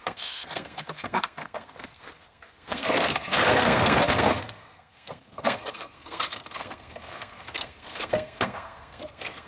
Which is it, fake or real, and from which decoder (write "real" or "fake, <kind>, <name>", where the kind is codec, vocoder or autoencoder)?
fake, codec, SNAC